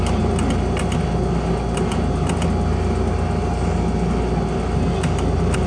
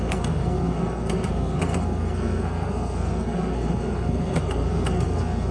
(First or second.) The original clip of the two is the first